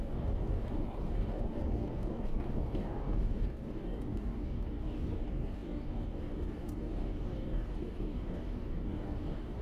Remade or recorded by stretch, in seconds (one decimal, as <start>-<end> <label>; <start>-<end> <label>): 0.0-9.6 remade